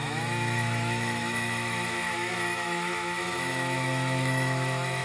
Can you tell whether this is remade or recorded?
remade